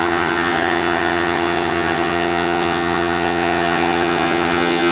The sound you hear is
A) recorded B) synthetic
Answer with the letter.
B